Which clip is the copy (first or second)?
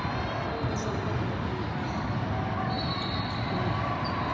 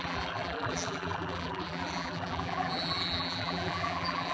second